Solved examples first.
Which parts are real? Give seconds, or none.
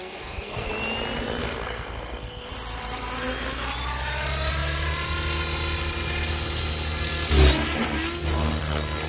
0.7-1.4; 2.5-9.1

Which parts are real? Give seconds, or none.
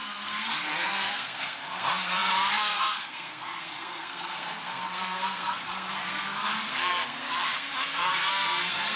none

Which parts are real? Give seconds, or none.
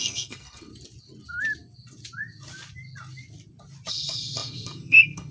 0.7-3.9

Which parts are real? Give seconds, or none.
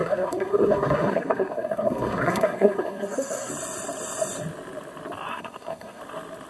3.5-5.3; 6.0-6.5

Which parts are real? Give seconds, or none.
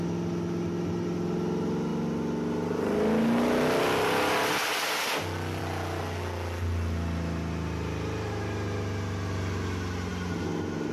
0.0-10.9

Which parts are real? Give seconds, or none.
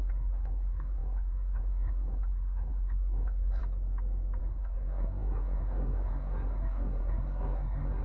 3.6-4.4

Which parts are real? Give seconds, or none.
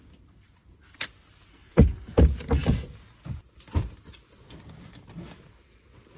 0.0-1.5; 2.2-6.2